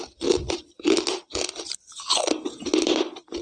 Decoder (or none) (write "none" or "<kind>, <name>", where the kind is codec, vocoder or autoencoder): none